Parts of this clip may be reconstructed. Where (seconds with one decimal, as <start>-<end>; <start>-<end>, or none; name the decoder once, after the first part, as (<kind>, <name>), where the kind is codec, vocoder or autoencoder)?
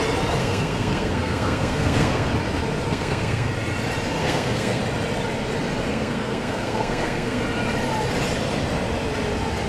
0.4-2.3 (codec, SNAC); 2.9-3.5; 4.2-4.8; 5.9-7.4